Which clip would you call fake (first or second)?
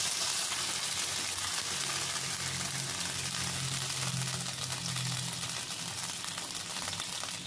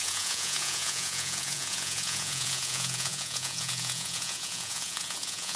second